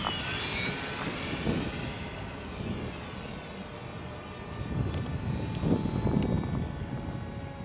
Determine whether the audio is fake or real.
real